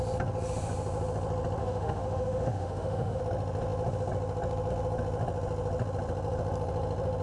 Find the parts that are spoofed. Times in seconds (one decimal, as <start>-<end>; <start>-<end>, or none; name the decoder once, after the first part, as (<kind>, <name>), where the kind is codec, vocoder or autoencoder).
1.6-3.2 (autoencoder, DAC-VAE)